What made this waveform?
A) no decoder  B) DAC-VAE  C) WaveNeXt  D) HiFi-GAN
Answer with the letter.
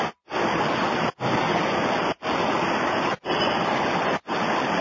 A